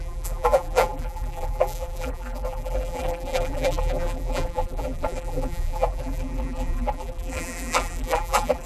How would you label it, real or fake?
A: fake